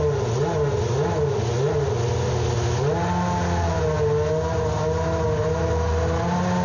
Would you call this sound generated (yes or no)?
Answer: no